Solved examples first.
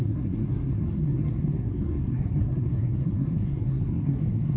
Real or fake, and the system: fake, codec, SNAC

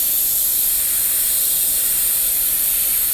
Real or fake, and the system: real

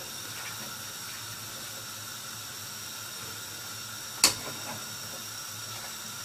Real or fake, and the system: real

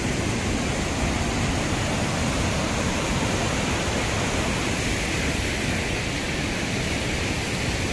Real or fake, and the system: real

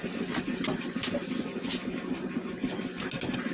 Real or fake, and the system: real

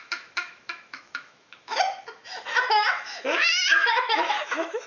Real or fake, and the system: fake, autoencoder, DAC-VAE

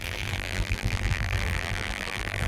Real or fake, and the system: fake, vocoder, BigVGAN v2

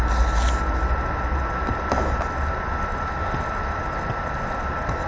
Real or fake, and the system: real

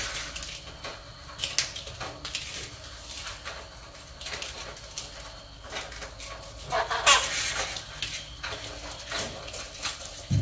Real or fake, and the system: real